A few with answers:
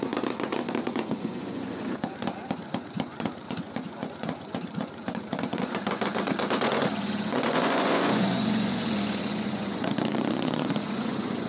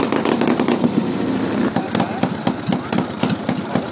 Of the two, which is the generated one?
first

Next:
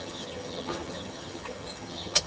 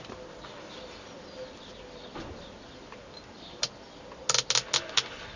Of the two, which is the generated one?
first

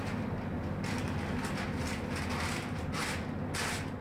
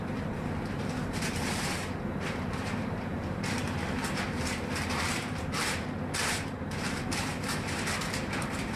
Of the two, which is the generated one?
second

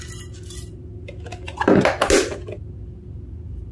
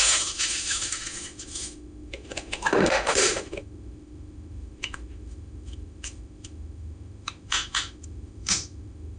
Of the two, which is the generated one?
second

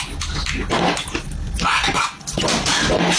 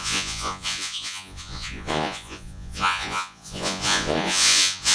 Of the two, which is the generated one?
second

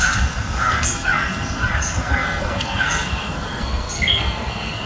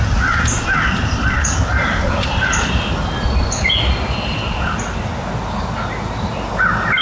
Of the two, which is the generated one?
first